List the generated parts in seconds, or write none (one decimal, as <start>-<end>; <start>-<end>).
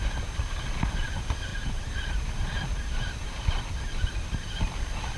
1.5-4.6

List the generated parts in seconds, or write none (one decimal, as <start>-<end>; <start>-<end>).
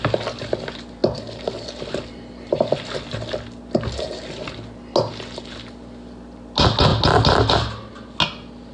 none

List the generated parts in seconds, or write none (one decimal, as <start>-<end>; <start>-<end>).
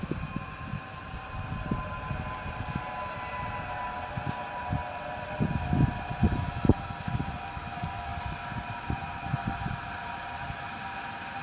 none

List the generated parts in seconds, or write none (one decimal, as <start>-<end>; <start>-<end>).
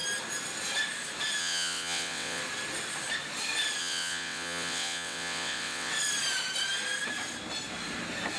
1.4-2.4; 3.8-5.9